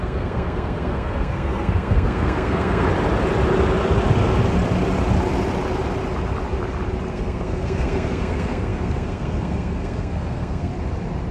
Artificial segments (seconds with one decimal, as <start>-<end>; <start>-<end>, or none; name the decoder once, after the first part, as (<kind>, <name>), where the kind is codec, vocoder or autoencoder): 0.0-2.9 (codec, SNAC); 7.1-10.7